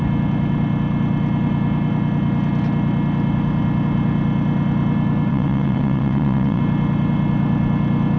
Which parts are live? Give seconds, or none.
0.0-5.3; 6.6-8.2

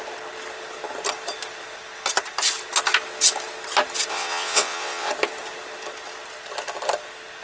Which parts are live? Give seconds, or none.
0.0-4.1; 5.1-7.4